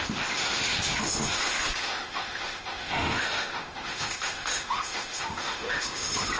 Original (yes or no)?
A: no